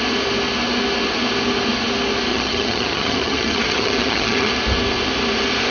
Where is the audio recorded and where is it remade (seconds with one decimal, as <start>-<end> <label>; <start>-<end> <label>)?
0.0-2.3 recorded; 2.3-4.5 remade; 4.5-5.7 recorded